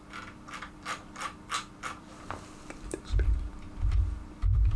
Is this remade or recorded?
remade